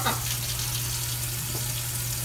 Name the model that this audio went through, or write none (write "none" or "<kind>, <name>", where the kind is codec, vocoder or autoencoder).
none